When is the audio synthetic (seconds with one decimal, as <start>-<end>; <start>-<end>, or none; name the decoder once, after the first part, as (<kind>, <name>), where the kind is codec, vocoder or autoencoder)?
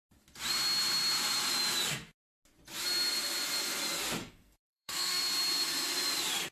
4.2-5.2 (codec, SNAC)